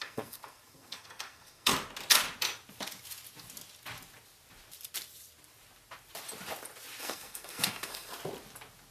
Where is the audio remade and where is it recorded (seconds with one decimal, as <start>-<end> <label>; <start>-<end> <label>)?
0.0-1.7 remade; 1.7-7.0 recorded; 7.0-8.2 remade; 8.2-8.9 recorded